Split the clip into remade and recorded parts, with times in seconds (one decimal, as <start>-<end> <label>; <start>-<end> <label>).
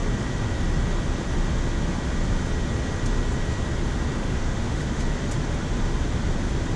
0.0-4.2 recorded; 4.2-5.0 remade; 5.0-6.8 recorded